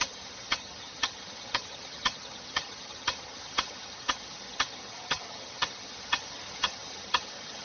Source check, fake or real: fake